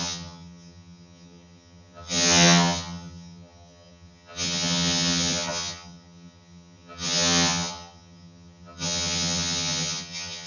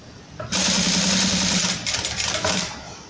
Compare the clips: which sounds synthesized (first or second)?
first